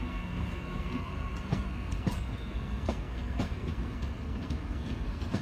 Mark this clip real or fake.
fake